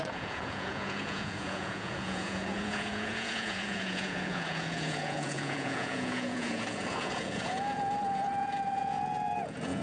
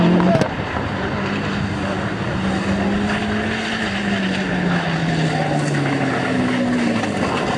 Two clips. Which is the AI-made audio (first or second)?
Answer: first